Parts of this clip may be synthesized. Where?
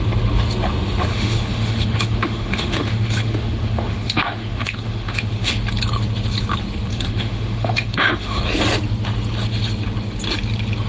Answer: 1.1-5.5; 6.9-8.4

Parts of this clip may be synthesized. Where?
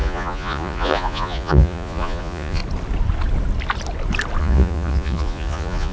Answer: 0.0-2.6; 4.4-5.9